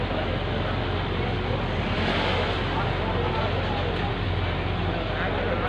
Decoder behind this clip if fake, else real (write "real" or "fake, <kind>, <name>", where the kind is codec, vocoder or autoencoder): real